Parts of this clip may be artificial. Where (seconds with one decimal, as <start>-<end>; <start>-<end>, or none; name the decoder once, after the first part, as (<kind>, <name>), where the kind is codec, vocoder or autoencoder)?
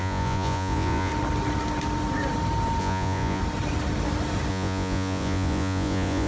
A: 0.0-1.1 (vocoder, Vocos); 2.8-3.4; 4.5-6.3